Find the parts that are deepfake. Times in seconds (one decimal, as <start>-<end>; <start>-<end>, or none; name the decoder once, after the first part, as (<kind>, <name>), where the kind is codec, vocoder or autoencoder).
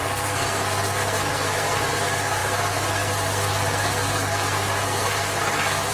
0.0-5.9 (codec, SNAC)